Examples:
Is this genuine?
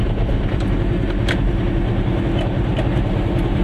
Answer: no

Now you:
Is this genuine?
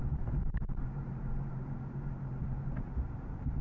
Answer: no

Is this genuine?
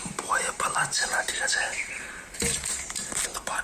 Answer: no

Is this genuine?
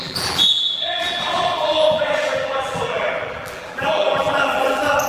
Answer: no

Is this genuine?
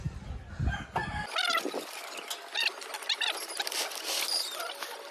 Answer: yes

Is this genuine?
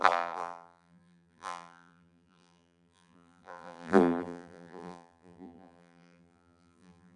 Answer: no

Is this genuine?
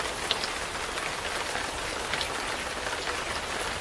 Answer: yes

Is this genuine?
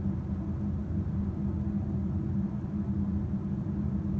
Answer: yes